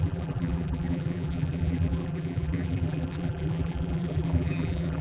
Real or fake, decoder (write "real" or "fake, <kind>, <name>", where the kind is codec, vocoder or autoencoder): fake, vocoder, BigVGAN v2